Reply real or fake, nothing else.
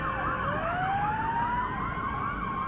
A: real